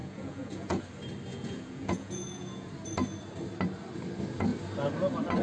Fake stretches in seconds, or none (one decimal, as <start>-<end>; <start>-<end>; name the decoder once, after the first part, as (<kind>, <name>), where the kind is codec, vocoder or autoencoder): 0.0-0.8 (vocoder, Vocos); 1.3-2.7